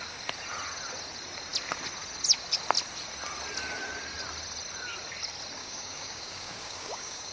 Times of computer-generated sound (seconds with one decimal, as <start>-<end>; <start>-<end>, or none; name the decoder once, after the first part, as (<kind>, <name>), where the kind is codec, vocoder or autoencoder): 5.6-7.3 (codec, DAC)